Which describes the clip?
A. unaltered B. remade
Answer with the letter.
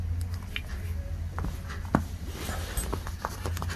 A